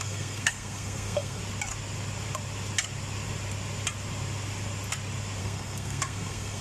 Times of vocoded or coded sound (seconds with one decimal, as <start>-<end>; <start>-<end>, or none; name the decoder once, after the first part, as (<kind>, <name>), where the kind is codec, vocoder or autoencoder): 0.0-1.4 (codec, SNAC); 5.4-6.6